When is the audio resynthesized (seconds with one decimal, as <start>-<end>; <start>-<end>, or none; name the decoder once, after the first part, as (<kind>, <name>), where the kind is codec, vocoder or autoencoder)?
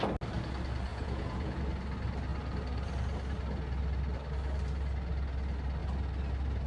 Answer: 0.9-1.6 (vocoder, Vocos)